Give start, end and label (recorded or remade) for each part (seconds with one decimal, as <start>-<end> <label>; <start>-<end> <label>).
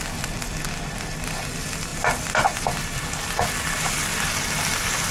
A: 0.0-5.1 recorded